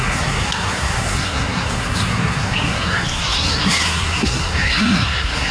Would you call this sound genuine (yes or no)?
no